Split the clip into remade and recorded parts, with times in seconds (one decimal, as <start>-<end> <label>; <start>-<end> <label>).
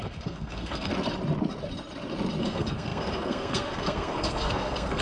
0.0-0.9 remade; 0.9-2.4 recorded; 2.4-5.0 remade